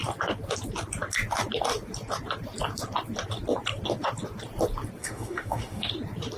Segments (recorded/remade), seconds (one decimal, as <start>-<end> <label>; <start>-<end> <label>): 0.0-5.0 recorded; 5.0-5.9 remade; 5.9-6.4 recorded